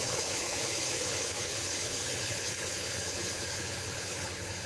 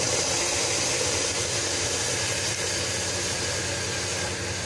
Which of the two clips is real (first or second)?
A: second